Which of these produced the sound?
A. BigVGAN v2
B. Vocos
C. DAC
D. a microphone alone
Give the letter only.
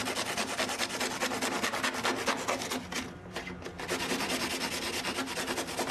D